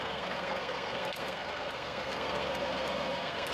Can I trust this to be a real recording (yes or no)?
no